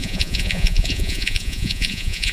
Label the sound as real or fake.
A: fake